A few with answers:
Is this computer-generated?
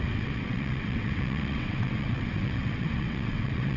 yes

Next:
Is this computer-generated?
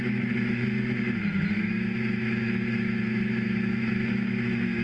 yes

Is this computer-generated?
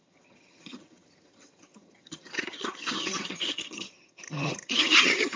yes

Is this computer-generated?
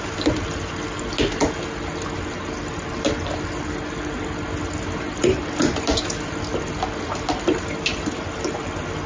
no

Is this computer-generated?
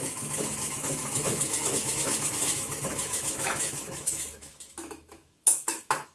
yes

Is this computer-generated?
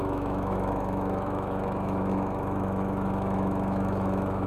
yes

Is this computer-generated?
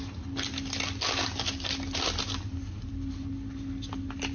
no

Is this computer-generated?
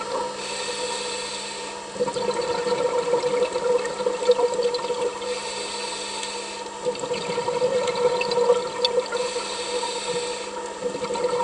no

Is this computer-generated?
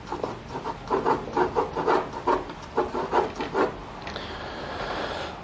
no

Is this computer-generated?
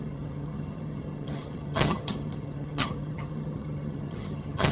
yes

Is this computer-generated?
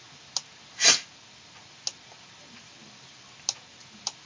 no